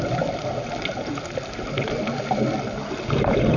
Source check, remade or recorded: recorded